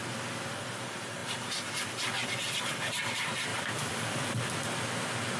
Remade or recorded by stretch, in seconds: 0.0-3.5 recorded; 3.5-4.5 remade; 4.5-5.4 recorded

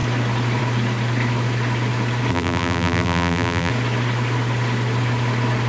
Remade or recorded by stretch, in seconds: 0.0-2.3 recorded; 2.3-3.7 remade; 3.7-5.7 recorded

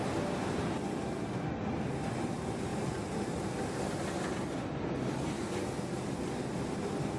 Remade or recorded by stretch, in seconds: 0.0-7.2 recorded

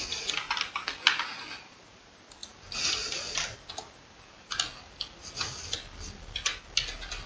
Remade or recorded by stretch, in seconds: 0.0-7.3 recorded

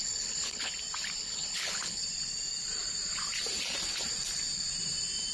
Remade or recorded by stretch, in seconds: 0.0-0.7 remade; 0.7-1.2 recorded; 1.2-2.0 remade; 2.0-5.3 recorded

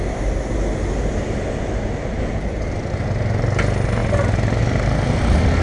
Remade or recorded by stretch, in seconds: 0.0-5.6 recorded

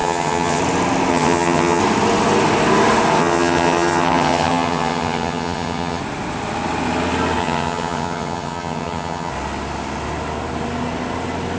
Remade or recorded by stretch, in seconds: 0.0-0.6 remade; 0.6-1.1 recorded; 1.1-1.8 remade; 1.8-3.2 recorded; 3.2-6.0 remade; 6.0-7.4 recorded; 7.4-9.3 remade; 9.3-11.6 recorded